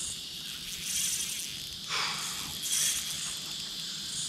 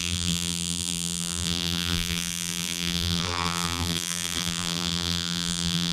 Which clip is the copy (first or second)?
second